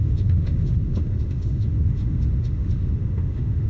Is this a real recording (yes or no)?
no